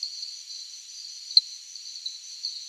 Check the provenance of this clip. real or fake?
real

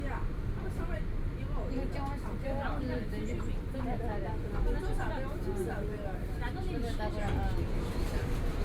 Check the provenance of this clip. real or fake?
real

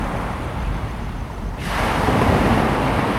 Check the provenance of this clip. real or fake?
fake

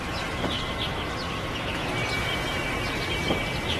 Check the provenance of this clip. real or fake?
fake